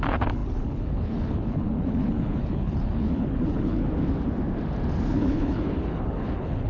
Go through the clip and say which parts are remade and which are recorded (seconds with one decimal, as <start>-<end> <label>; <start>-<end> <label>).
0.0-3.8 remade; 3.8-5.1 recorded; 5.1-6.7 remade